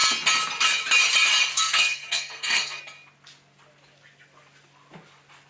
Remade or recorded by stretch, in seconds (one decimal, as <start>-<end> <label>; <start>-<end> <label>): 0.0-1.5 recorded; 1.5-2.8 remade; 2.8-5.5 recorded